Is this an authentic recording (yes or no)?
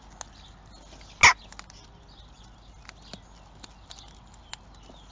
yes